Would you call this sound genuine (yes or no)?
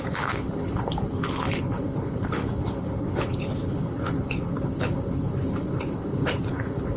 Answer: no